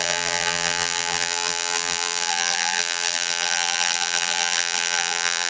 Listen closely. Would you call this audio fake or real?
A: fake